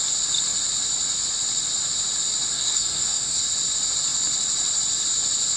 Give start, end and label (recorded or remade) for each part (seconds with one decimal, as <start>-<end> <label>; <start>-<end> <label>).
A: 0.0-2.5 recorded; 2.5-3.4 remade; 3.4-5.6 recorded